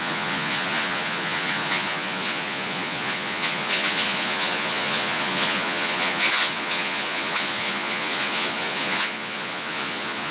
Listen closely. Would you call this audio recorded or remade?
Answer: remade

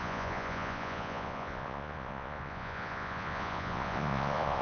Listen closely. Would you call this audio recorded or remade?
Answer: remade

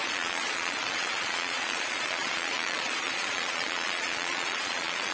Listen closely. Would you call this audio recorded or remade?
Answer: remade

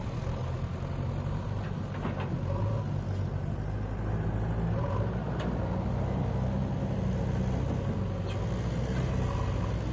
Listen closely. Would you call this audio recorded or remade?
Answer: recorded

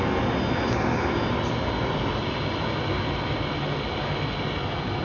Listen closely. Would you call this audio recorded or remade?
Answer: recorded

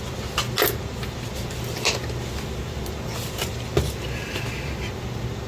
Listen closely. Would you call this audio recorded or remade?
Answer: recorded